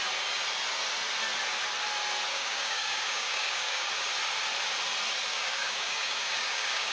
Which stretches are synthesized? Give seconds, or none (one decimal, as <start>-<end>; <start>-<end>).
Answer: 2.3-3.9; 5.3-6.9